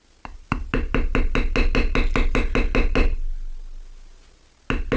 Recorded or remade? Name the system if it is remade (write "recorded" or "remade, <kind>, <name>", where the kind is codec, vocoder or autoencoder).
recorded